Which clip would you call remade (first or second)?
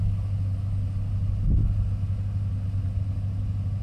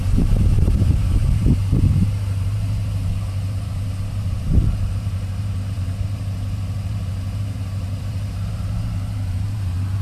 second